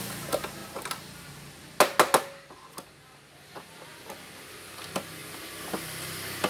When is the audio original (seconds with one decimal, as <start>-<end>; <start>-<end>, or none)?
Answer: 0.0-6.5